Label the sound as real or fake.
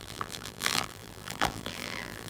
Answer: fake